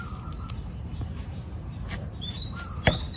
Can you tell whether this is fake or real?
real